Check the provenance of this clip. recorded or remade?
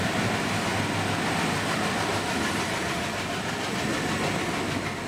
recorded